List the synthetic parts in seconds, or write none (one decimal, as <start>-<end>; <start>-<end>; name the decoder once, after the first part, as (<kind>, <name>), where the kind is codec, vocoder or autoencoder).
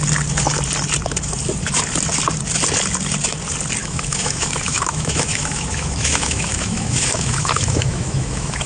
3.8-8.7 (autoencoder, DAC-VAE)